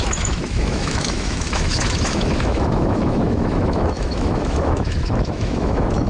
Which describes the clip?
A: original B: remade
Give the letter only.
B